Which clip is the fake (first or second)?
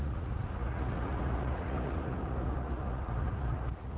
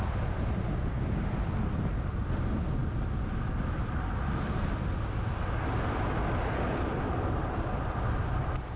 first